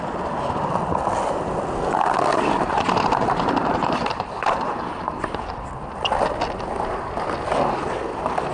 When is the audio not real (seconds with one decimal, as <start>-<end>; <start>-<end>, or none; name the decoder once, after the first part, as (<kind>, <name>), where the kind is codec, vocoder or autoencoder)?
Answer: 2.3-5.6 (vocoder, BigVGAN v2)